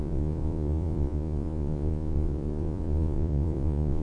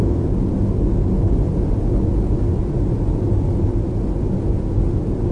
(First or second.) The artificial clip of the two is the first